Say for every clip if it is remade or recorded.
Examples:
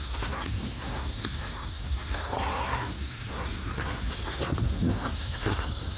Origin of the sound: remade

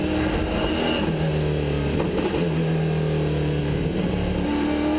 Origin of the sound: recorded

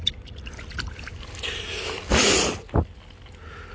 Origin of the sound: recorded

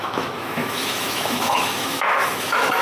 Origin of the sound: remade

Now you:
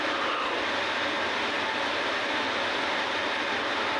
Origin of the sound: recorded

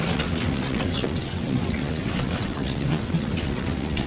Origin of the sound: remade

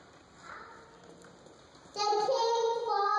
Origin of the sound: recorded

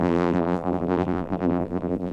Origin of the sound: remade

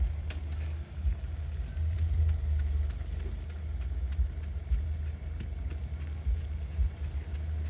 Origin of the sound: recorded